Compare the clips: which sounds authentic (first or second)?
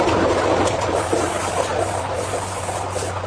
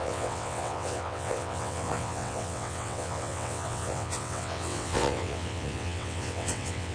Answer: first